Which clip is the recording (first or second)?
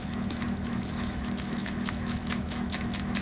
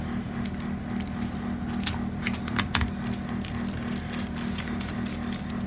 second